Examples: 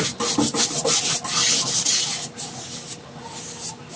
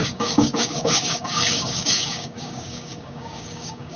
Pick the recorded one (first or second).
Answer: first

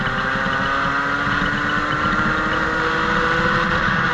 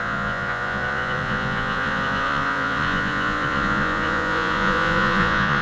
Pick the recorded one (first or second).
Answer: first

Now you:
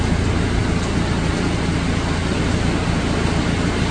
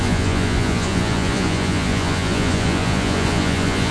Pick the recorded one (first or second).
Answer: first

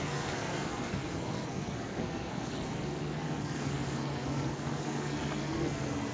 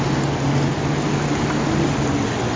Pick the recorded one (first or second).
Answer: second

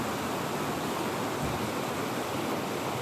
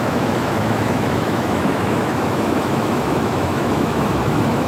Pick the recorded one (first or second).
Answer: first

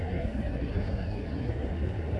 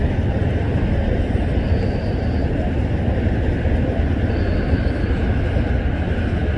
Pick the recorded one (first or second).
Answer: second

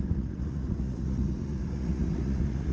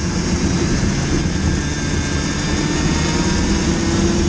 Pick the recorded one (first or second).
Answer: second